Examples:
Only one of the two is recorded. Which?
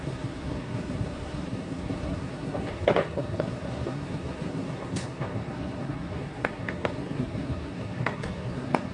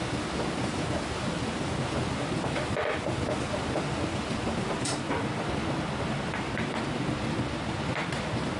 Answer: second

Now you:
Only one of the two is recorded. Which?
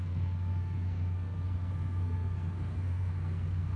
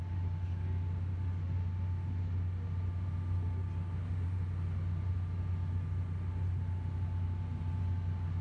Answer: second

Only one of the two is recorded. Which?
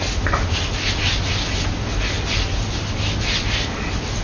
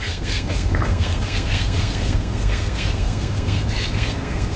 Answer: first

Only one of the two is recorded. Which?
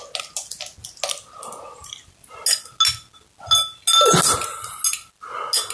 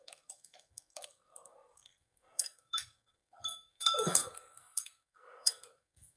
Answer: first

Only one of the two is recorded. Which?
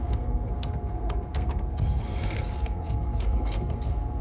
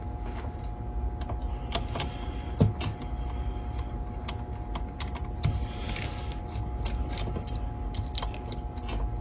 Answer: second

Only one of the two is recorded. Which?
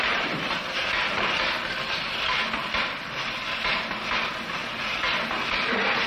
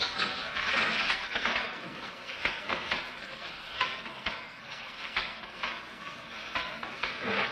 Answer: first